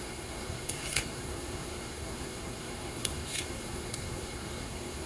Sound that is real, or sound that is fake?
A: fake